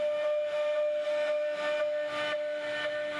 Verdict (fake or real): real